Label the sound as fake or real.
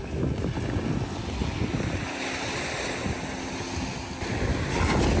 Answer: real